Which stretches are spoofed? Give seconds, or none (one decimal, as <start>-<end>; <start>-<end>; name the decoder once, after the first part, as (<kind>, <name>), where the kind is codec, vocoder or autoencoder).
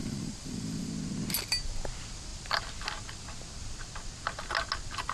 0.0-0.9 (vocoder, BigVGAN v2)